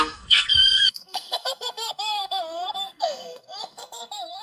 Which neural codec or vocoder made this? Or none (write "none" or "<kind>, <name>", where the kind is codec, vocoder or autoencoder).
codec, SNAC